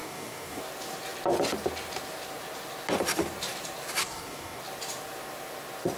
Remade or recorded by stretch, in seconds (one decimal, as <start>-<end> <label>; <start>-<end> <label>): 0.0-0.6 remade; 0.6-4.0 recorded; 4.0-4.6 remade; 4.6-6.0 recorded